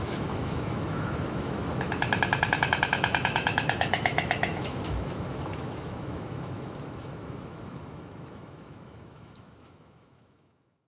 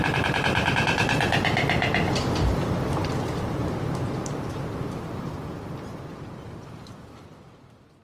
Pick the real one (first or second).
second